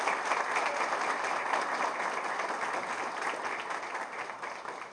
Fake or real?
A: real